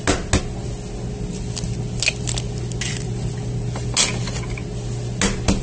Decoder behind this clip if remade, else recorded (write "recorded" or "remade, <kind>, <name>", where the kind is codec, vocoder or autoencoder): recorded